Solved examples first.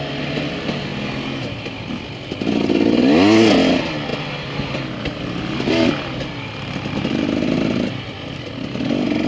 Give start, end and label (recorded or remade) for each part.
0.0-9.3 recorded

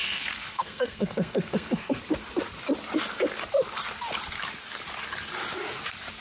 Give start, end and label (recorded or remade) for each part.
0.0-2.0 remade; 2.0-6.2 recorded